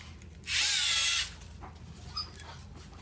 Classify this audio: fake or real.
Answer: real